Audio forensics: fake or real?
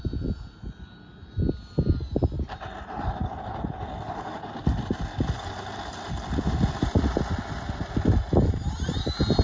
real